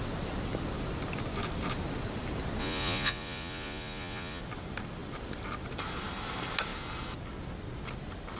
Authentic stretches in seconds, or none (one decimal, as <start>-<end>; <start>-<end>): 0.0-2.6; 4.4-8.4